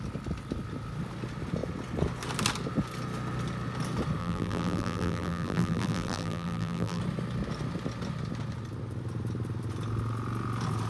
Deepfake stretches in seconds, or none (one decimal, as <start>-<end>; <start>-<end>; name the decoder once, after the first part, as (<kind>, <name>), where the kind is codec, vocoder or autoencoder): 4.2-7.0 (vocoder, BigVGAN v2)